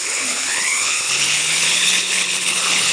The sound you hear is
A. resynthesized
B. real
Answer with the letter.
A